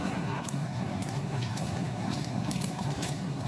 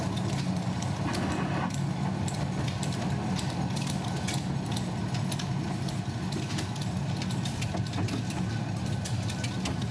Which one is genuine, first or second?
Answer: second